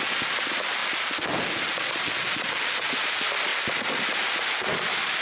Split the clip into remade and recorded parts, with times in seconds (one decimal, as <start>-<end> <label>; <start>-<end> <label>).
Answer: 0.0-5.2 recorded